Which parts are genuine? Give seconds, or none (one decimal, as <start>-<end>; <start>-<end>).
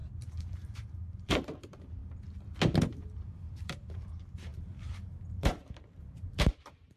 2.0-2.8